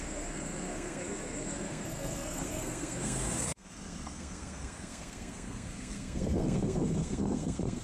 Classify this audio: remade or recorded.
remade